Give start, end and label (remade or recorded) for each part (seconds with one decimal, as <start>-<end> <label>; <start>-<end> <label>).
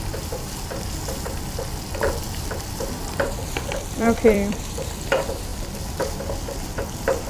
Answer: 0.0-7.3 remade